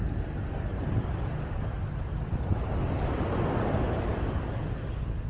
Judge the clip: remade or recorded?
recorded